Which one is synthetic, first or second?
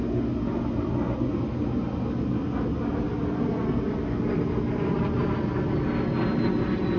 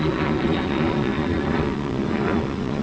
second